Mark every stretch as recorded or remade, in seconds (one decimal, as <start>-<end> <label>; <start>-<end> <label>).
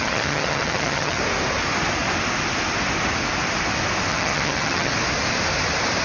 0.0-1.2 remade; 1.2-4.1 recorded; 4.1-4.9 remade; 4.9-6.0 recorded